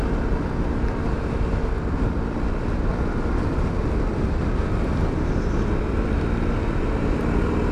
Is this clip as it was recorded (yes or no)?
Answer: yes